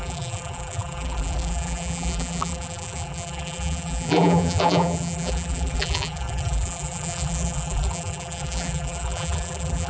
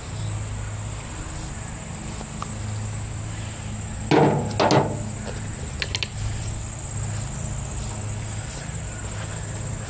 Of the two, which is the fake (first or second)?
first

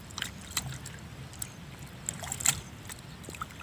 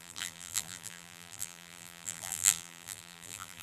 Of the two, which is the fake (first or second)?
second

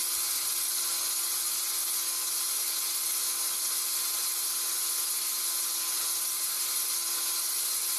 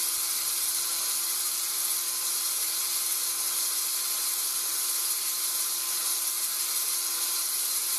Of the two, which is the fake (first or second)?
second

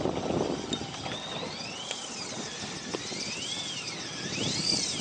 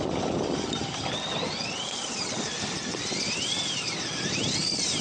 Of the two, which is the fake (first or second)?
second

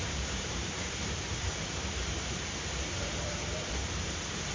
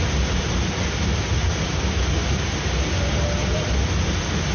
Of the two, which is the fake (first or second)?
first